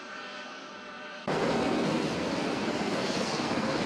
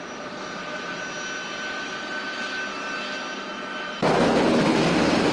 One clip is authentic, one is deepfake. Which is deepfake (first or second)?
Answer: first